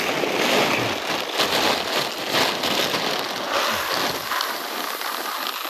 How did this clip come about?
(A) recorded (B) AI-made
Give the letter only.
A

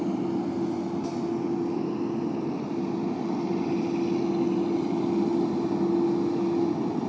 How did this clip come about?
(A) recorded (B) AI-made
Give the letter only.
A